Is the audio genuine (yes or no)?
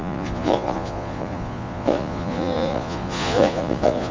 no